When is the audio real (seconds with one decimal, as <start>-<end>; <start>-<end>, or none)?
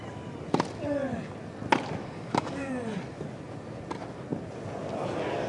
0.0-2.0; 2.7-5.5